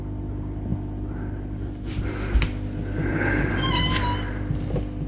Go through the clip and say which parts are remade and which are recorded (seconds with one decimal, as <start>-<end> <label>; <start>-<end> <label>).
0.0-5.1 recorded